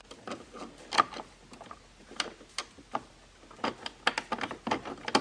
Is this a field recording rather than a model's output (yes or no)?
yes